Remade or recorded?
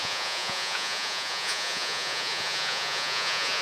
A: remade